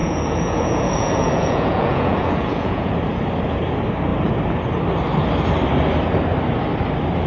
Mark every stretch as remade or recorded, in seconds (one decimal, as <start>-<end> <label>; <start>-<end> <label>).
0.0-2.9 remade; 2.9-7.3 recorded